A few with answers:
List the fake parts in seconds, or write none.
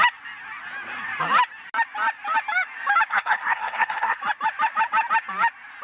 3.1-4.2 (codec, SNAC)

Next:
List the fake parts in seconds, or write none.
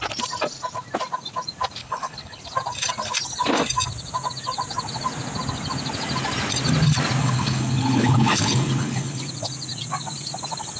1.8-2.4 (codec, HILCodec); 7.2-9.2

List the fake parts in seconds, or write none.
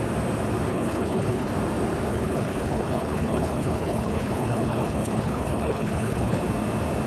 0.7-1.5 (codec, HILCodec); 2.1-6.4